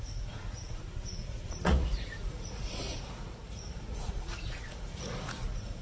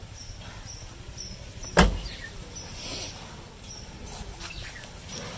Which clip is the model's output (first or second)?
first